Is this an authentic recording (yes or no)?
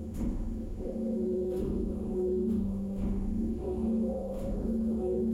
no